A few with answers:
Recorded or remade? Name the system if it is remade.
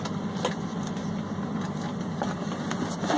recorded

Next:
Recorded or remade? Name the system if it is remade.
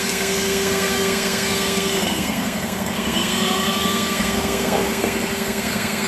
remade, codec, SNAC